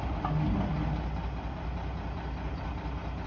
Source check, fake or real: real